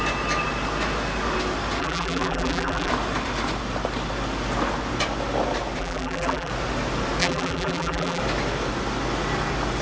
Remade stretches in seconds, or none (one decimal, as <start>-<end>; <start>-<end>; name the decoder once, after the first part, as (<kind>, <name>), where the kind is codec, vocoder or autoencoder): 1.8-2.9 (vocoder, BigVGAN v2); 5.8-6.5; 7.2-8.2